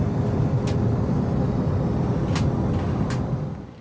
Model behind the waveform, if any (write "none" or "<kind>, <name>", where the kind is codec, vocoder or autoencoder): none